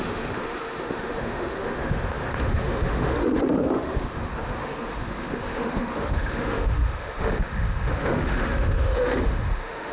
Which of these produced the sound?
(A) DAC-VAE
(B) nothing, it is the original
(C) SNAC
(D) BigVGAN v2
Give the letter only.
A